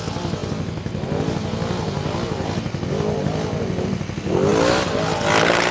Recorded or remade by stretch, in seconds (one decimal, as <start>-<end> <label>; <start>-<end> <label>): 0.0-5.7 recorded